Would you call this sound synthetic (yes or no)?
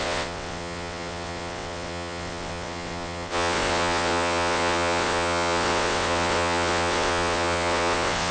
yes